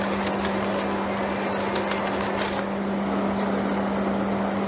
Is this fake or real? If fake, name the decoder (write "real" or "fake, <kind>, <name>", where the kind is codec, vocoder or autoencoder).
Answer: real